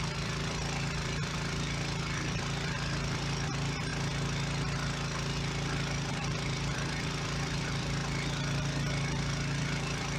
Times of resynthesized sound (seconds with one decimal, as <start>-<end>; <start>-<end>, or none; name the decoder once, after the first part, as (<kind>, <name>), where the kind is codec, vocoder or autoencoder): 0.0-3.9 (vocoder, BigVGAN v2); 6.1-8.0; 9.2-10.2

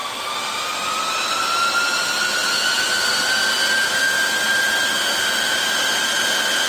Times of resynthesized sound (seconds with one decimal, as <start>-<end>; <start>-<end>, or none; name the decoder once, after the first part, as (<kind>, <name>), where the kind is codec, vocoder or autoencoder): none

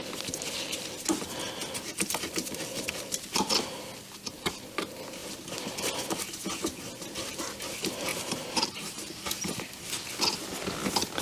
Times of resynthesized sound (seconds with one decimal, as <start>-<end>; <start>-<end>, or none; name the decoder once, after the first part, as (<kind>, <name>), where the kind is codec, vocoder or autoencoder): 8.1-9.1 (vocoder, BigVGAN v2)

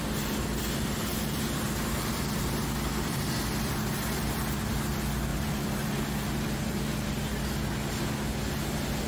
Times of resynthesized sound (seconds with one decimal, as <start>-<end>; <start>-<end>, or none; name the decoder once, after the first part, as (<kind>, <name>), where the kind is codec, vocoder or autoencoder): 1.1-2.5 (vocoder, BigVGAN v2); 5.3-7.1

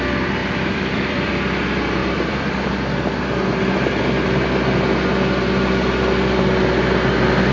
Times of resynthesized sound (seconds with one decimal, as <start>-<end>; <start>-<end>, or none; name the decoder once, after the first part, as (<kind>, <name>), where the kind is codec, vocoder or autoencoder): 0.4-1.3 (vocoder, BigVGAN v2); 2.0-2.7